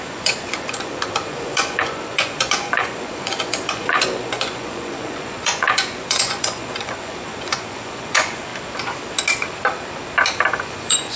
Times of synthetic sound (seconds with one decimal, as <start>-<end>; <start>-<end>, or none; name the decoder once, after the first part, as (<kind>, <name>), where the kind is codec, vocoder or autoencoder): 0.0-8.5 (vocoder, Vocos); 10.6-11.2